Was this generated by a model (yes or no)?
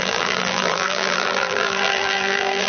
yes